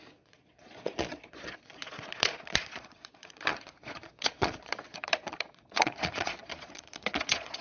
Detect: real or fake fake